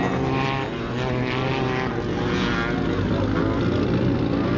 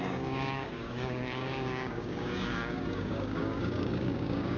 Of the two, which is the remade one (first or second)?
second